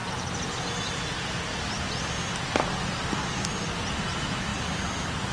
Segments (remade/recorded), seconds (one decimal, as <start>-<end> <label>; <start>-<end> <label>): 0.0-5.3 recorded